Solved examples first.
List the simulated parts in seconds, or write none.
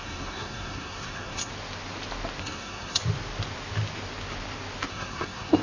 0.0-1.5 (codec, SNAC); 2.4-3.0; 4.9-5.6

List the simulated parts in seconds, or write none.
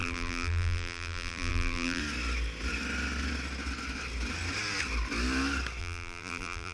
0.0-2.0 (vocoder, BigVGAN v2); 5.8-6.7